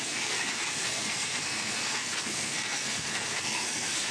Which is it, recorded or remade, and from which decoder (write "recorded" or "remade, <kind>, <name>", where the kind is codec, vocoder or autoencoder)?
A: remade, codec, SNAC